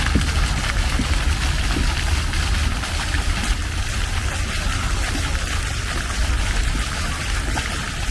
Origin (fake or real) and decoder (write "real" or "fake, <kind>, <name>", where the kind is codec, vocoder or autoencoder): real